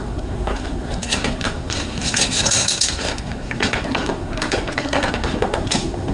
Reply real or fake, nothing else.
fake